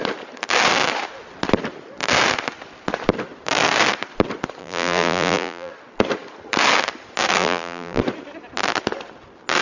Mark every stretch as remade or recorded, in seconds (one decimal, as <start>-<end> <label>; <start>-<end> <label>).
0.0-4.6 recorded; 4.6-5.7 remade; 5.7-7.4 recorded; 7.4-8.0 remade; 8.0-9.6 recorded